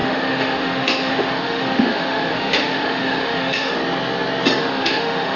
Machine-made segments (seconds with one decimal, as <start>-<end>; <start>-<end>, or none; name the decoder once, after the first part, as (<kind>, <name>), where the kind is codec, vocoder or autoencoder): 0.0-3.7 (autoencoder, DAC-VAE); 4.6-5.4